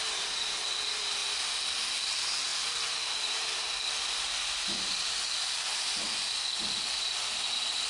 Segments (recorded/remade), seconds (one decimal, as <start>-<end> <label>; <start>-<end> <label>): 0.0-2.5 recorded; 2.5-4.9 remade; 4.9-7.9 recorded